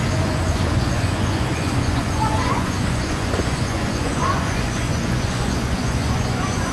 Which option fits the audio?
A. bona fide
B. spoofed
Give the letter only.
B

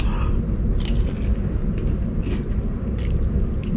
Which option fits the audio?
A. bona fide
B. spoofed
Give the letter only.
A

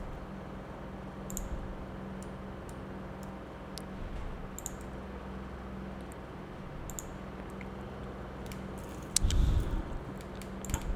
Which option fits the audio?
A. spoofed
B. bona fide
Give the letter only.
B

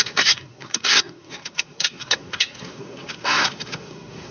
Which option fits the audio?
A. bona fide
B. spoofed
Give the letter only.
B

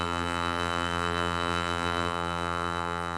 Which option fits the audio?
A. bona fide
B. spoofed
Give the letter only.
B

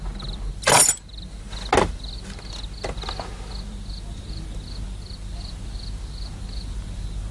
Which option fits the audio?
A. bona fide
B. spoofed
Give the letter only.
A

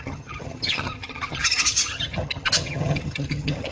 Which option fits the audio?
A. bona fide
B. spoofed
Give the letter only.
B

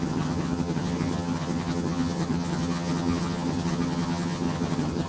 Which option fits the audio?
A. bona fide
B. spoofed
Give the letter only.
B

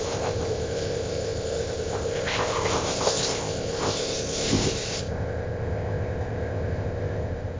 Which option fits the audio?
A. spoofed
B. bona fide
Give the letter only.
A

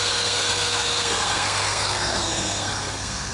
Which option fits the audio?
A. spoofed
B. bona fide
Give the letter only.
A